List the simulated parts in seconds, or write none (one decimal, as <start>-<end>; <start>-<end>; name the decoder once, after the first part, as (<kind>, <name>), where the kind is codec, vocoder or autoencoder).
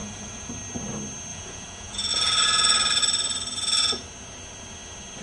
0.0-0.5 (vocoder, Vocos); 1.3-2.1